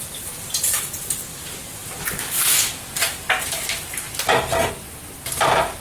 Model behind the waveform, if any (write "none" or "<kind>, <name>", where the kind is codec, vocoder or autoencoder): none